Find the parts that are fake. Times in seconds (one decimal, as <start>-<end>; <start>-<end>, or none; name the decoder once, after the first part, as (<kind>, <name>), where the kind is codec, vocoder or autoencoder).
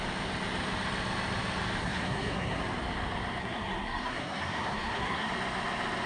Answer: 1.8-2.6 (codec, SNAC); 3.4-5.3